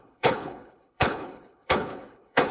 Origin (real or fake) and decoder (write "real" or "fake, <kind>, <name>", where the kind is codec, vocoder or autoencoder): fake, codec, HILCodec